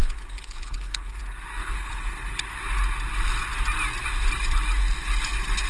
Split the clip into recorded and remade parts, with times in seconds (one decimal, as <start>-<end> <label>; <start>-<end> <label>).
0.0-1.2 remade; 1.2-1.6 recorded; 1.6-2.4 remade; 2.4-5.7 recorded